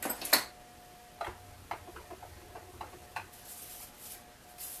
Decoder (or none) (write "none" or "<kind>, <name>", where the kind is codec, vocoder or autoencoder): none